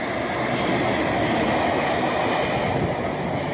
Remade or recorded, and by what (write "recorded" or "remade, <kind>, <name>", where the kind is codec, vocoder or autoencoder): recorded